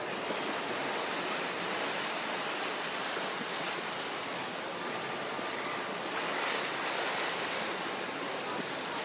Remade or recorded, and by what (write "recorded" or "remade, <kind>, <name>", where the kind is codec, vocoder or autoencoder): recorded